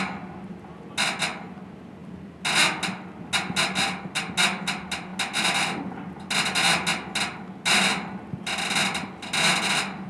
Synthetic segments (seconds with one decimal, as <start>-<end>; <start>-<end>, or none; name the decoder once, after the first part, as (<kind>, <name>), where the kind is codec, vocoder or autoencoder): none